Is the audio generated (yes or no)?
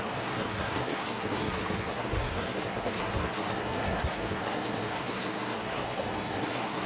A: yes